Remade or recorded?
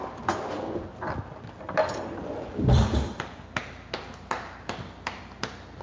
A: recorded